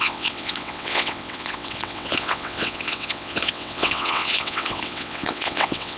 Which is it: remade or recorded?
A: remade